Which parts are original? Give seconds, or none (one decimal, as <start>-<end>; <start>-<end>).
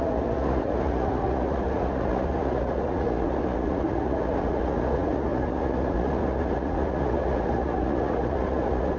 none